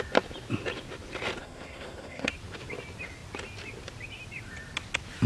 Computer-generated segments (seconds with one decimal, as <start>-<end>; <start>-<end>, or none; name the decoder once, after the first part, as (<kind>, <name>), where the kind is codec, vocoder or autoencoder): 1.4-2.3 (codec, SNAC)